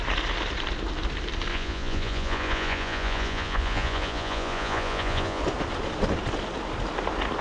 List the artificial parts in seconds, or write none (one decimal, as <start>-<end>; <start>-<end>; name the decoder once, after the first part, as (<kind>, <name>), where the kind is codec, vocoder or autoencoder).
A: 1.5-5.4 (vocoder, Vocos)